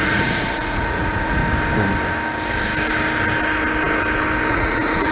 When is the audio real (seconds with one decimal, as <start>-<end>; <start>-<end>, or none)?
1.4-4.5